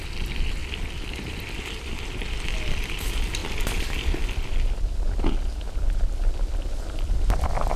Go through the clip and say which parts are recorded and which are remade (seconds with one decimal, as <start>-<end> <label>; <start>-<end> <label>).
0.0-7.8 recorded